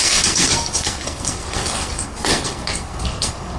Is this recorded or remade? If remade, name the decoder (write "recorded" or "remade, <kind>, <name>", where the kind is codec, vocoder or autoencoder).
remade, codec, SNAC